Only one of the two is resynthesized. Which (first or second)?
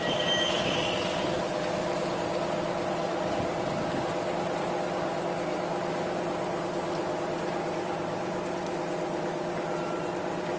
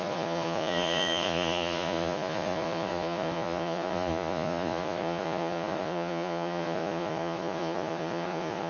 second